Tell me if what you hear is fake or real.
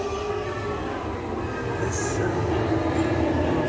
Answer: real